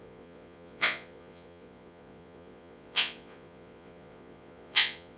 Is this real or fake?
fake